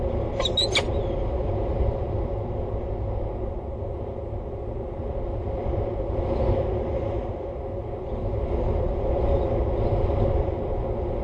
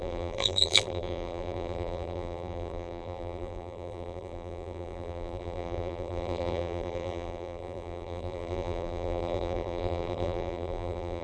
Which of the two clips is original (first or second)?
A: first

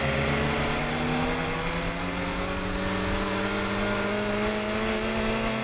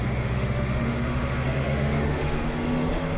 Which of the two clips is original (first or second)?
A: first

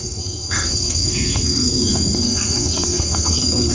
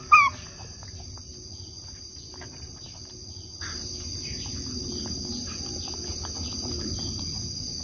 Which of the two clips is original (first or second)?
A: second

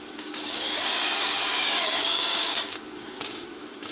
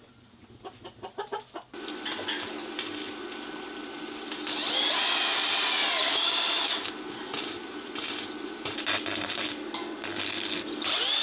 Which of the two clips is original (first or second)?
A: second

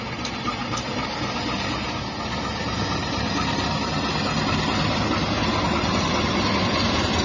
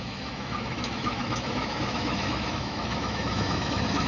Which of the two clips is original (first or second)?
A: first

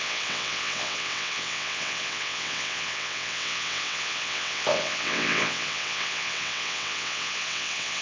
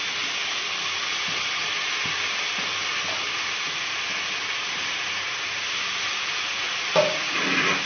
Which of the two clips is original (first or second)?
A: second